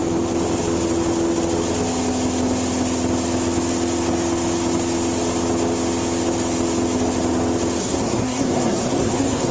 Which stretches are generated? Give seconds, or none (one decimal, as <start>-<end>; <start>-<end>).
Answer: 7.8-9.5